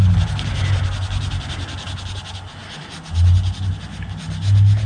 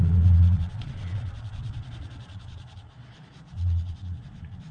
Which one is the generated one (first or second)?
second